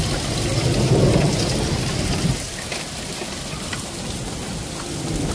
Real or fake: real